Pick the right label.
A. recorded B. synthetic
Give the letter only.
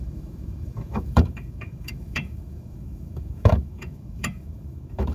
B